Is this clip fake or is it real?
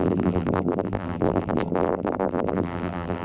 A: fake